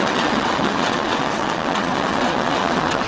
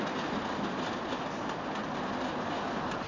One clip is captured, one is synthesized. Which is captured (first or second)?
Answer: second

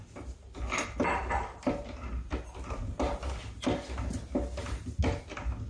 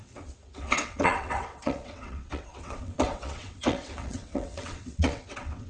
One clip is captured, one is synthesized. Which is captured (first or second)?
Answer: first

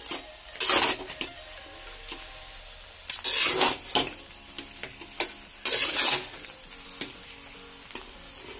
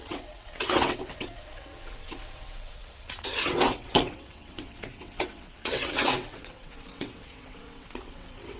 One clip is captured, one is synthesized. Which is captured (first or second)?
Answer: first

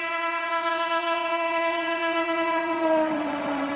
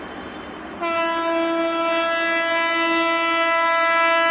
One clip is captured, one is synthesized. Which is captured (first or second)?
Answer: second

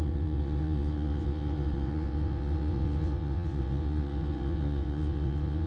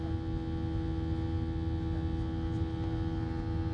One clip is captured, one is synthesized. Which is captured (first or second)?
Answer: second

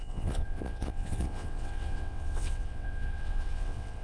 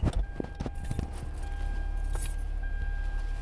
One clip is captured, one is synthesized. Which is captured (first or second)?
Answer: second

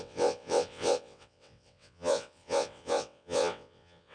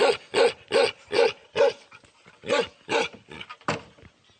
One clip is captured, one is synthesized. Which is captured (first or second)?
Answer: second